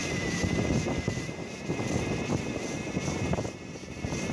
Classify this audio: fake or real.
real